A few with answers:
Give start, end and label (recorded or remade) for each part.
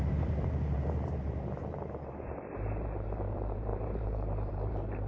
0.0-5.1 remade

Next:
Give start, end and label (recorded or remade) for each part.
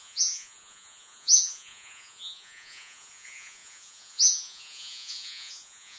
0.0-6.0 remade